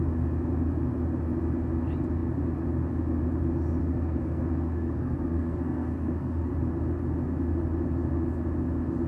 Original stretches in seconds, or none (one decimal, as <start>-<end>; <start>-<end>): 0.0-3.8; 6.5-9.1

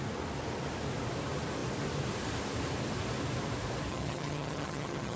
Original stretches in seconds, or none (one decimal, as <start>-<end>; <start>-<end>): 0.0-3.9

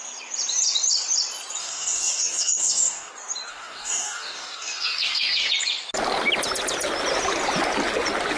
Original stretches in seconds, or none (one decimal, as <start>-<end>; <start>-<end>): 0.0-1.6; 3.1-3.5; 5.5-8.4

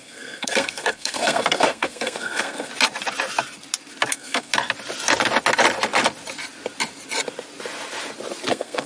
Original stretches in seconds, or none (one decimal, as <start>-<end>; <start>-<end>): 2.7-4.1; 4.5-8.5